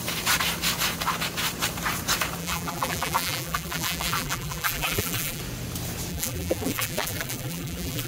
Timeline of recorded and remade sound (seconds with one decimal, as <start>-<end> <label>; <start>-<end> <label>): 0.0-2.4 recorded; 2.4-5.4 remade; 5.4-6.1 recorded; 6.1-8.1 remade